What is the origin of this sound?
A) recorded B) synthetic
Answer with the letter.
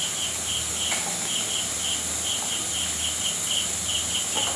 A